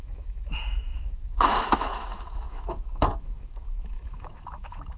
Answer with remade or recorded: remade